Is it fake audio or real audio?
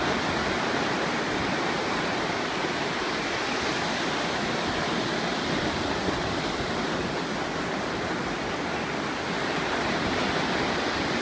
real